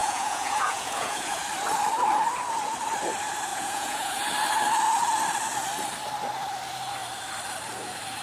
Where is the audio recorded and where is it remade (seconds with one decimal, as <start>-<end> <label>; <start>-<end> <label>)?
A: 0.0-1.4 remade; 1.4-3.5 recorded; 3.5-4.2 remade; 4.2-8.2 recorded